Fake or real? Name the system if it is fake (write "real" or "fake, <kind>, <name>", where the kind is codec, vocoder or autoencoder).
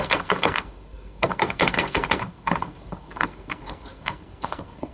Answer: fake, codec, SNAC